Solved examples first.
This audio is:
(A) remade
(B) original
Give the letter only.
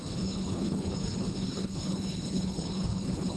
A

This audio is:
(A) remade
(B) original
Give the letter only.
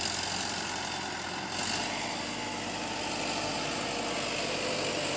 B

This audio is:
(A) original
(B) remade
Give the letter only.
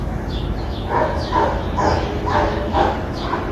B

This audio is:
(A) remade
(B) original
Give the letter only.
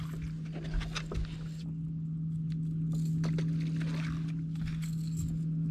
B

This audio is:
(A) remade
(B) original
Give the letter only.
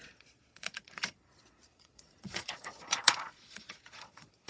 A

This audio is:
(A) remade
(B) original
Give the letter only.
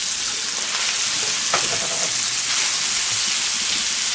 B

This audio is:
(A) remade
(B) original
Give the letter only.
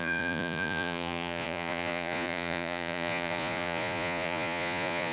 A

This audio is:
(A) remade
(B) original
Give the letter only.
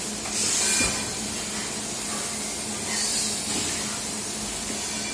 B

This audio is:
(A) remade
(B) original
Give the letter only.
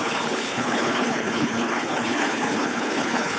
A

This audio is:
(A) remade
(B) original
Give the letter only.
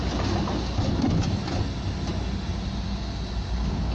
B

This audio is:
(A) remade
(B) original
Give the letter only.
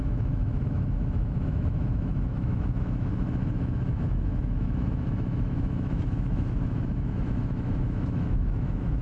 A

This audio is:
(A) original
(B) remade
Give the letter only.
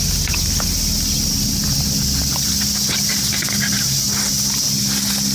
A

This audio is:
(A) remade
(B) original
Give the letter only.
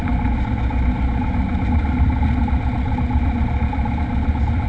B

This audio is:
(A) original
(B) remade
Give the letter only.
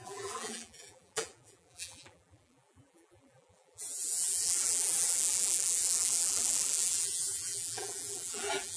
B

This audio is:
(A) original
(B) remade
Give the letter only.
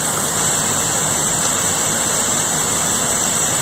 A